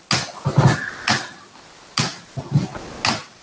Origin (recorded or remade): recorded